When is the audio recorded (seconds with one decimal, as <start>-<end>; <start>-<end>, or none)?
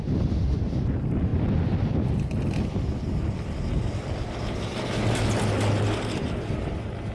0.0-7.1